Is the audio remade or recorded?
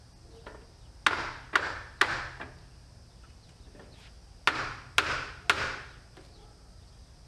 recorded